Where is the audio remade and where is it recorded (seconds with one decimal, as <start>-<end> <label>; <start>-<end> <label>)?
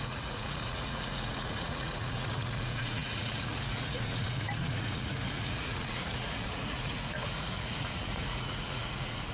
0.0-9.3 remade